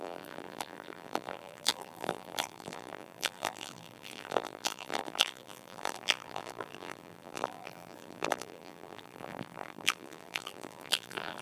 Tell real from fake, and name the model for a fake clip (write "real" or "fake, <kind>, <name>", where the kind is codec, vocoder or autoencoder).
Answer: fake, vocoder, BigVGAN v2